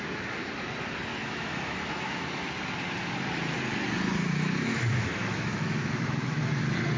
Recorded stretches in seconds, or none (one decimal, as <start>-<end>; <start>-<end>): 0.0-1.1; 2.5-4.7; 6.5-7.0